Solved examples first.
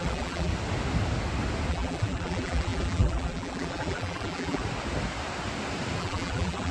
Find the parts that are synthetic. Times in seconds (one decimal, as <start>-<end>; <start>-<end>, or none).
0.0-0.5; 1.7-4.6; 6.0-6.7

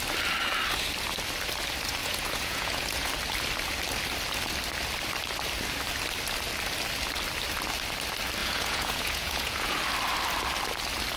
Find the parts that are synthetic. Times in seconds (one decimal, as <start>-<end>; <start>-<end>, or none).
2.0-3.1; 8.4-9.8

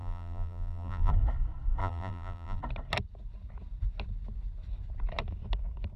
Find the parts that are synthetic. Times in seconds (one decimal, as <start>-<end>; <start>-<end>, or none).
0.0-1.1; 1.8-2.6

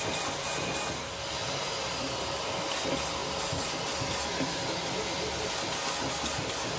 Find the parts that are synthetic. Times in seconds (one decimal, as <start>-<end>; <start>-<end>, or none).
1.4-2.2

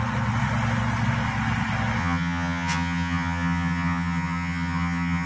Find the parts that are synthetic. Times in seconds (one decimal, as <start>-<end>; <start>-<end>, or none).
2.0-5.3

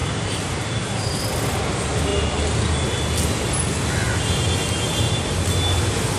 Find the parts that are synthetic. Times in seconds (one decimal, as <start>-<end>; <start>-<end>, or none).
0.0-1.3

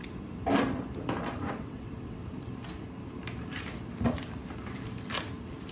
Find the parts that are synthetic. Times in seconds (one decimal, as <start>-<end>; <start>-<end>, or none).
1.4-2.2